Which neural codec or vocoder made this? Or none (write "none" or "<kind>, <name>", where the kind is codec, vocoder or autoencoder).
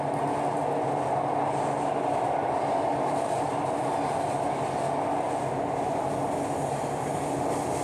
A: none